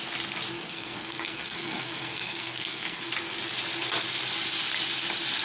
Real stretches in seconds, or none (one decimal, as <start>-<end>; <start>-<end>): 0.0-0.5; 3.1-5.4